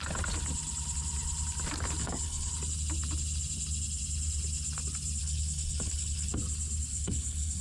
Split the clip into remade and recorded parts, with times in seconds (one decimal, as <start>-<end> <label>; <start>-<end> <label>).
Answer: 0.0-2.0 recorded; 2.0-2.5 remade; 2.5-5.2 recorded; 5.2-6.3 remade; 6.3-6.9 recorded; 6.9-7.6 remade